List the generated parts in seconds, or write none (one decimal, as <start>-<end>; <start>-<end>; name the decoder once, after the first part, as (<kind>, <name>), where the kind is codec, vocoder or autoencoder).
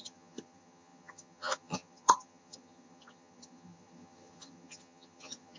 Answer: 0.0-5.6 (vocoder, HiFi-GAN)